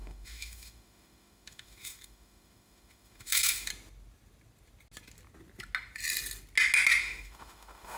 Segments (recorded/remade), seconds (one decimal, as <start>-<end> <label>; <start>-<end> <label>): 0.0-3.7 remade; 3.7-7.0 recorded; 7.0-8.0 remade